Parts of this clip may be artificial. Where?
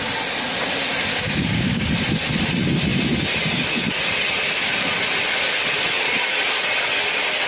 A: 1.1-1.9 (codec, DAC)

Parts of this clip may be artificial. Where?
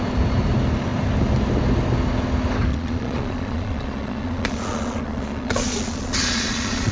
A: 2.7-6.9 (vocoder, Vocos)